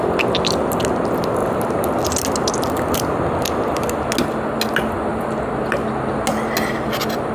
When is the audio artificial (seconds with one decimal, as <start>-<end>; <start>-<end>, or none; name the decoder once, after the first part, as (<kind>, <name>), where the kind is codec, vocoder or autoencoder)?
1.4-2.0 (vocoder, BigVGAN v2)